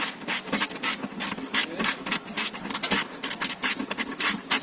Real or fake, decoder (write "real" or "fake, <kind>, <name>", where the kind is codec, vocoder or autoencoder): real